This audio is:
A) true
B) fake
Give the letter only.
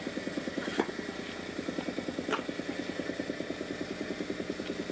A